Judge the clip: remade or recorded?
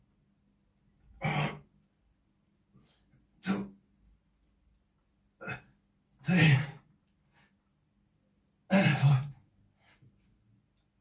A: recorded